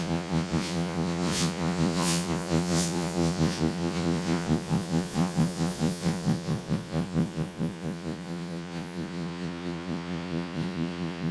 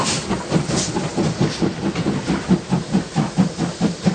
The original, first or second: second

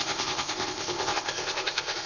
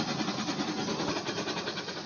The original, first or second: second